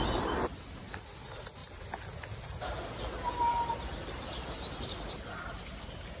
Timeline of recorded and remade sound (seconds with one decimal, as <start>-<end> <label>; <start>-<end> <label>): 0.0-6.2 recorded